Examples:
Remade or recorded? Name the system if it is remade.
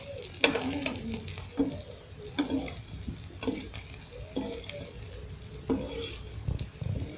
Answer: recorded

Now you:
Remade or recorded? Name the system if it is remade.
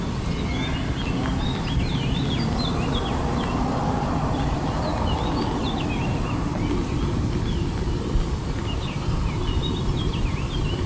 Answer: recorded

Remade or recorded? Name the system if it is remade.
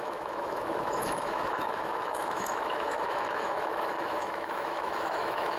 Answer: remade, autoencoder, DAC-VAE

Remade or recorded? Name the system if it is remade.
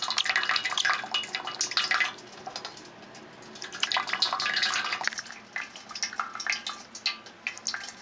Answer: recorded